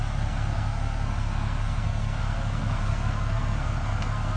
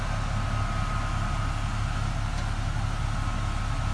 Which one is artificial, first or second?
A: first